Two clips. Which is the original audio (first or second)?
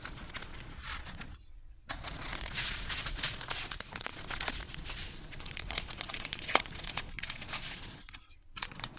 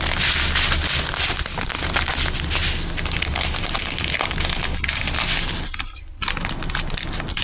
second